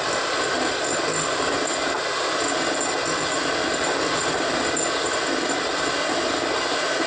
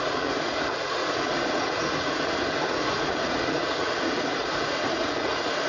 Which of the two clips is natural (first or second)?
first